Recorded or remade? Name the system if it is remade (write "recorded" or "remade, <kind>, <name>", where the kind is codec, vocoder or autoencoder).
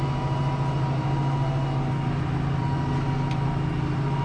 recorded